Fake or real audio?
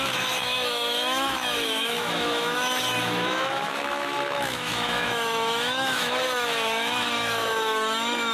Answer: fake